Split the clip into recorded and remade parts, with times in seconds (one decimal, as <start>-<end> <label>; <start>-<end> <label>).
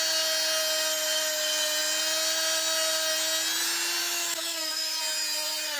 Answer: 0.0-4.0 recorded; 4.0-5.0 remade; 5.0-5.8 recorded